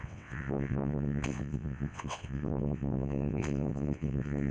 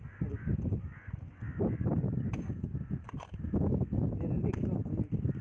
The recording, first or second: second